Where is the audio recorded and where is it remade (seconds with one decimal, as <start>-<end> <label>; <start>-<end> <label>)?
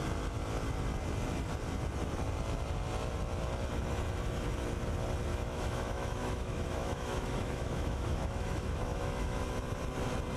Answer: 0.0-5.3 recorded; 5.3-9.4 remade; 9.4-10.4 recorded